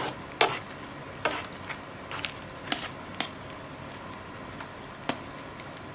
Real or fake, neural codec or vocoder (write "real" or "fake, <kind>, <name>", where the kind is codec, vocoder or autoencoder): real